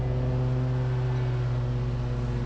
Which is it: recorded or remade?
recorded